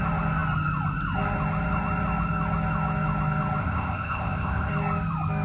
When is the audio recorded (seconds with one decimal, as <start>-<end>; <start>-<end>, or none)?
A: 0.0-3.6; 4.7-5.4

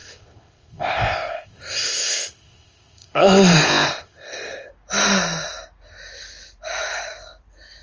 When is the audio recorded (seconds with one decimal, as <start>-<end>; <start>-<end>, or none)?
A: 4.7-7.8

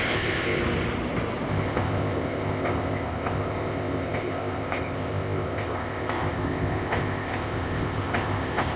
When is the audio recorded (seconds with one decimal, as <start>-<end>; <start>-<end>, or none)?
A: 0.6-1.5

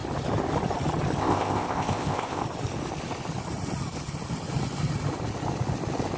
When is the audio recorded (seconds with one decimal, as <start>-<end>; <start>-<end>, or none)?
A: 0.0-1.2; 2.4-6.2

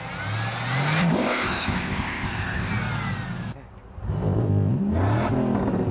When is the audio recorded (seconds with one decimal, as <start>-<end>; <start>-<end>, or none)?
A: 0.0-1.0; 2.7-4.1; 4.8-5.9